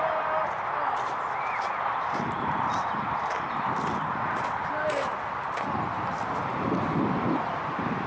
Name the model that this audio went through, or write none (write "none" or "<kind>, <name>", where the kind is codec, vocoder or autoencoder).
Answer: none